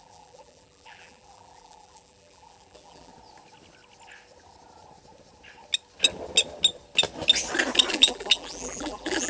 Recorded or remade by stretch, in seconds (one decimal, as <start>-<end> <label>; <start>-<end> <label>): 0.0-3.1 remade; 3.1-7.9 recorded; 7.9-9.3 remade